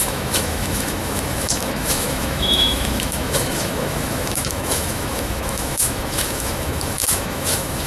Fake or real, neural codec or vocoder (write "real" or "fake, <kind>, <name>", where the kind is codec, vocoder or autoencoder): fake, autoencoder, DAC-VAE